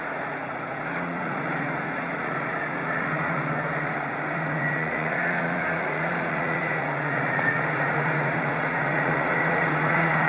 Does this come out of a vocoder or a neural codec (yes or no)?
yes